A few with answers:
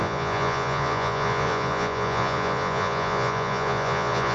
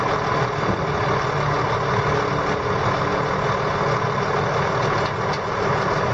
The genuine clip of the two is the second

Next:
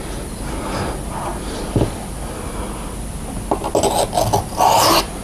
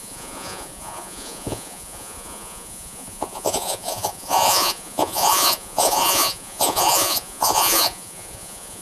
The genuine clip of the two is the first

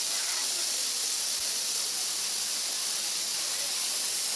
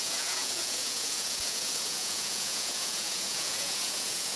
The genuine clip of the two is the first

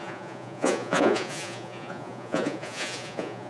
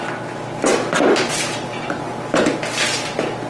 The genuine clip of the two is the second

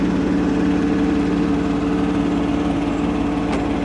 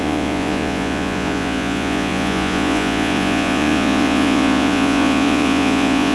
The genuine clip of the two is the first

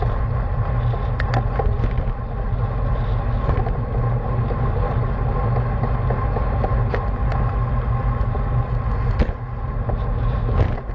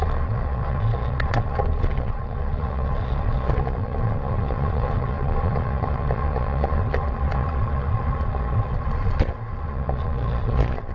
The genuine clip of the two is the first